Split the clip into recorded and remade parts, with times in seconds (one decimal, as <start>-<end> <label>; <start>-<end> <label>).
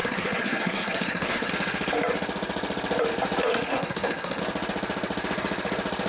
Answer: 0.0-1.5 remade; 1.5-3.5 recorded; 3.5-4.4 remade; 4.4-6.1 recorded